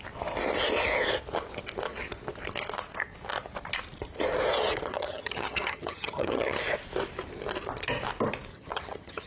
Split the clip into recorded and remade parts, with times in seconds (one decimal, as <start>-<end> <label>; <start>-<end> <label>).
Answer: 0.0-4.9 recorded; 4.9-6.6 remade; 6.6-8.5 recorded; 8.5-9.3 remade